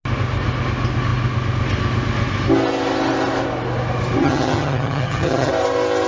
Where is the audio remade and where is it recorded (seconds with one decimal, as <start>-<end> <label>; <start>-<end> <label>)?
0.0-4.2 recorded; 4.2-5.5 remade; 5.5-6.1 recorded